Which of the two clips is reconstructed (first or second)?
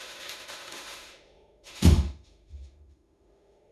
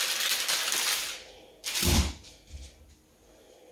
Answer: first